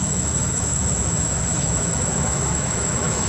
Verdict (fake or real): fake